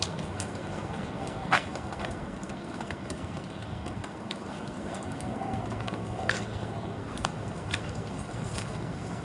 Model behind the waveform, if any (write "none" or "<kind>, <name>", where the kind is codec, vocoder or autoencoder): codec, SNAC